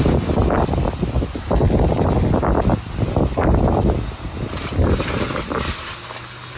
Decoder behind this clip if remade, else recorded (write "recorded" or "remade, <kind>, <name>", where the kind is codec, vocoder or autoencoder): recorded